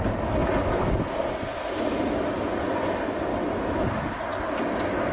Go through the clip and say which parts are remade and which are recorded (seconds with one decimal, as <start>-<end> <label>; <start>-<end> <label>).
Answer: 0.0-3.3 recorded; 3.3-3.9 remade; 3.9-5.1 recorded